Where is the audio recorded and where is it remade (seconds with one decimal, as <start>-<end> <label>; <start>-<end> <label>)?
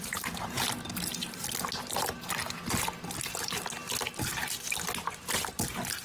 0.0-6.0 recorded